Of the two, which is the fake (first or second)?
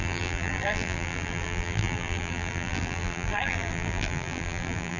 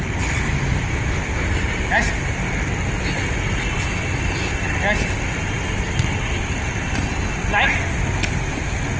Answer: first